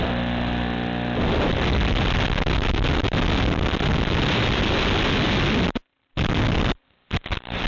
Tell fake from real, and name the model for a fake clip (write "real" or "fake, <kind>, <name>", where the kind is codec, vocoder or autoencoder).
real